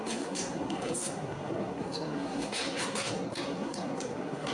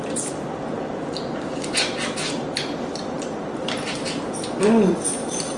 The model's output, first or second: first